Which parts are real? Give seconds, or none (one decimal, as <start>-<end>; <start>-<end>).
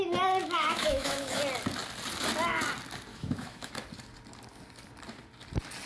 0.0-0.4; 1.4-3.1; 3.7-5.9